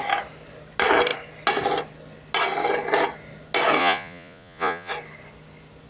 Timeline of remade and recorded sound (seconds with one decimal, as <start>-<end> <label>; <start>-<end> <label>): 0.0-3.8 recorded; 3.8-4.9 remade; 4.9-5.9 recorded